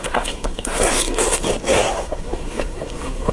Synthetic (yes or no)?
yes